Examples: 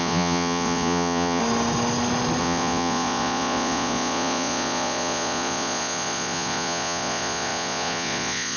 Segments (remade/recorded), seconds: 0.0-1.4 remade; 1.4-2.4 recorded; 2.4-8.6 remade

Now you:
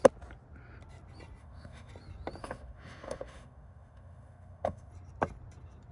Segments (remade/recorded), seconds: 0.0-1.4 recorded; 1.4-1.9 remade; 1.9-2.4 recorded; 2.4-4.9 remade; 4.9-5.9 recorded

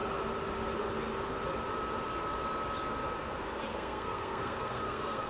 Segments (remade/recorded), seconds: 0.0-3.7 recorded; 3.7-5.3 remade

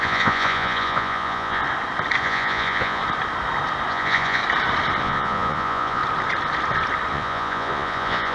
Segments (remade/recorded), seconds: 0.0-1.6 remade; 1.6-2.2 recorded; 2.2-3.0 remade; 3.0-3.9 recorded; 3.9-4.4 remade; 4.4-5.0 recorded; 5.0-6.0 remade; 6.0-7.1 recorded; 7.1-8.3 remade

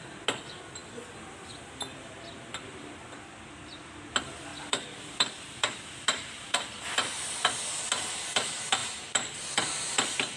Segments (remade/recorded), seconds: 0.0-4.5 recorded; 4.5-5.3 remade; 5.3-10.4 recorded

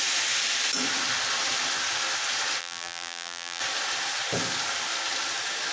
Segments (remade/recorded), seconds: 0.0-2.6 recorded; 2.6-3.6 remade; 3.6-5.7 recorded